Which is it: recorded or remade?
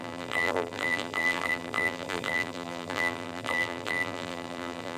remade